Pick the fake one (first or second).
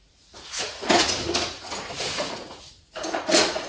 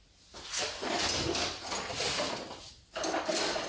first